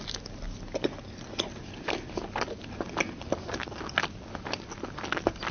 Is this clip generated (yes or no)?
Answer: no